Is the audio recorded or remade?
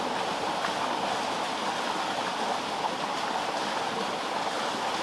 recorded